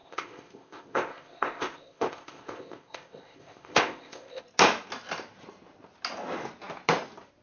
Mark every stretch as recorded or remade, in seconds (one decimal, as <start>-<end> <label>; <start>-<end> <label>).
0.0-4.4 remade; 4.4-7.4 recorded